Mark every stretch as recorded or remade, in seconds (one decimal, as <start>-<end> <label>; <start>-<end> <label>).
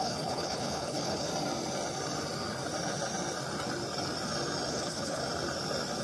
0.0-1.3 remade; 1.3-4.7 recorded; 4.7-5.2 remade; 5.2-6.0 recorded